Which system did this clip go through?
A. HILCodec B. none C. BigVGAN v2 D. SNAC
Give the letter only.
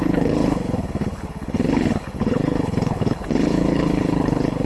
A